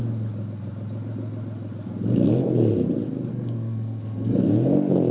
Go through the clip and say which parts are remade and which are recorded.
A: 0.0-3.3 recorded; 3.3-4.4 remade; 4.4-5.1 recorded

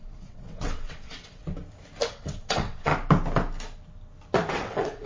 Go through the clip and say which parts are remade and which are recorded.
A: 0.0-1.4 remade; 1.4-2.1 recorded; 2.1-2.9 remade; 2.9-4.5 recorded; 4.5-5.1 remade

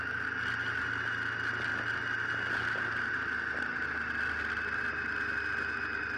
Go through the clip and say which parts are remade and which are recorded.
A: 0.0-6.2 recorded

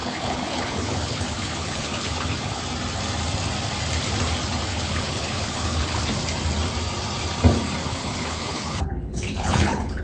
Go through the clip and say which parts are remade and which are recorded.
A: 0.0-2.6 remade; 2.6-4.7 recorded; 4.7-6.0 remade; 6.0-7.8 recorded; 7.8-10.0 remade

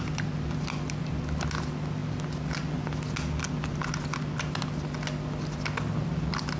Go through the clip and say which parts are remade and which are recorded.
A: 0.0-6.6 recorded

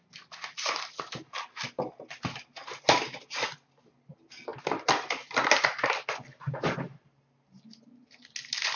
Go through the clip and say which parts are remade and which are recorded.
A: 0.0-8.8 recorded